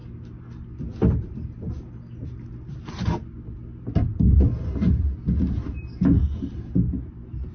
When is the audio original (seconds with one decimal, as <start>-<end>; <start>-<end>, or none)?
0.0-7.5

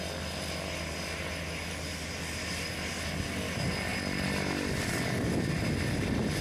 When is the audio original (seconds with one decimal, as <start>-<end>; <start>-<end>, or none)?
0.0-6.4

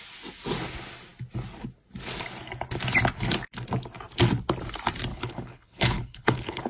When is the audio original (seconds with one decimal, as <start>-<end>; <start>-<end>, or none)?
0.0-5.1

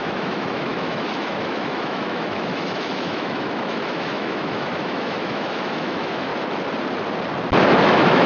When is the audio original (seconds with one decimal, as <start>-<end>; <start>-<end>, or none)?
6.3-7.8

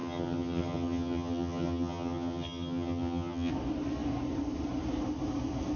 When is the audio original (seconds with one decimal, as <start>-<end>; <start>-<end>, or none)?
3.5-5.8

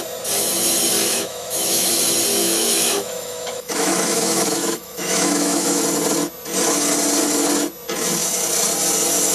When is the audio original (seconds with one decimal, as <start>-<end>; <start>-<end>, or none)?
0.0-1.0; 1.9-2.4; 5.8-9.3

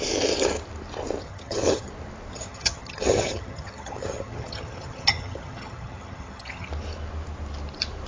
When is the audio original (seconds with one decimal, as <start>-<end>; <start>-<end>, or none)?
0.0-1.2; 1.9-2.3; 6.7-8.1

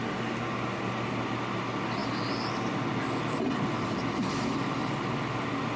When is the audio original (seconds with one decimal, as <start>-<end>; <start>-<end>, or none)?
0.0-5.8